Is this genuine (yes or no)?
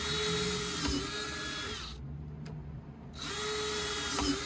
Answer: yes